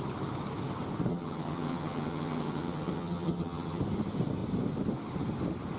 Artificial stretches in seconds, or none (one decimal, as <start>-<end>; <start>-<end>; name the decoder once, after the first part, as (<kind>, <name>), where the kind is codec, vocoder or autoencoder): 1.1-3.8 (vocoder, HiFi-GAN)